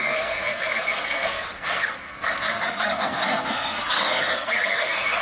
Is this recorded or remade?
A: remade